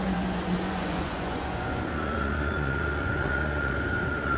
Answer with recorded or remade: remade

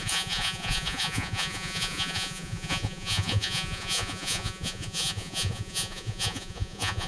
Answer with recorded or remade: remade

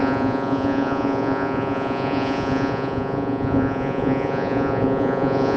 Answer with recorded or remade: remade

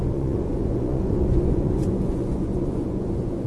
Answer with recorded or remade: remade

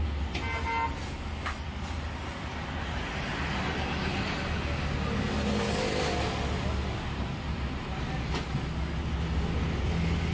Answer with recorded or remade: recorded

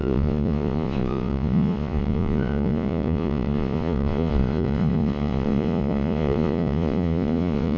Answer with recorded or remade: remade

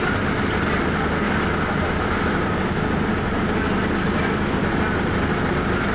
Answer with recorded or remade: recorded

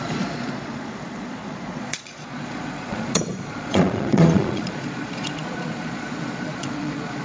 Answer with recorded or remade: remade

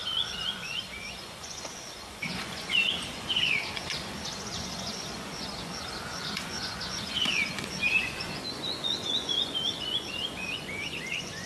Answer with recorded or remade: remade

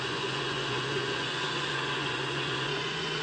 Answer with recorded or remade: remade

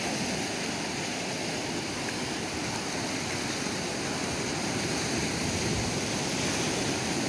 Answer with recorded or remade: recorded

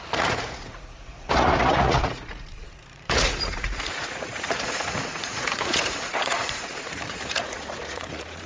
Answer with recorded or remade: remade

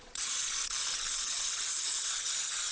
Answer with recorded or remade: remade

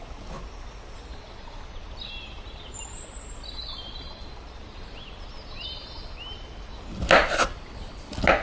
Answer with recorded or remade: recorded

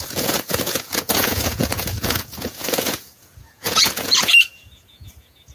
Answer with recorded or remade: remade